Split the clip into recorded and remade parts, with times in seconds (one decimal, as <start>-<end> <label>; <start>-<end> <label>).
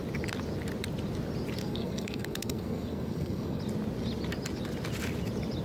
0.0-1.6 recorded; 1.6-3.6 remade; 3.6-5.6 recorded